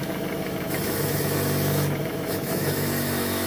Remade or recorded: remade